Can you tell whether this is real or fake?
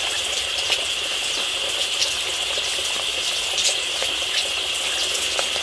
real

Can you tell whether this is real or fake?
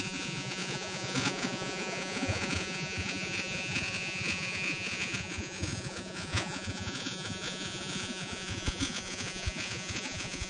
fake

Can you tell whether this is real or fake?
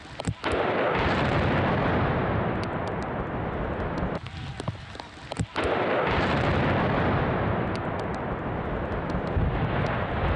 real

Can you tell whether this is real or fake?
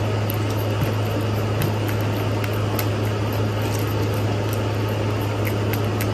real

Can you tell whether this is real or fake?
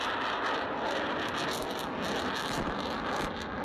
real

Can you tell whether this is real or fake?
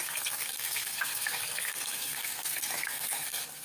fake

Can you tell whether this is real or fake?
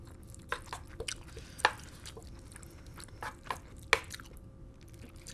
real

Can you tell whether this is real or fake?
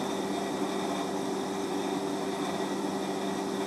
real